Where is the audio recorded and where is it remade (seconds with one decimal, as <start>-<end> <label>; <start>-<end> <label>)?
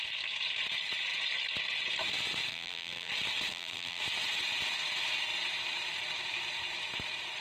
0.0-2.5 recorded; 2.5-3.1 remade; 3.1-3.5 recorded; 3.5-4.0 remade; 4.0-7.4 recorded